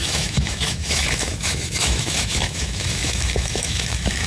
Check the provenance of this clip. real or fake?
fake